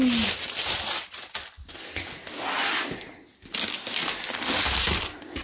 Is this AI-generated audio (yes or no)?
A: no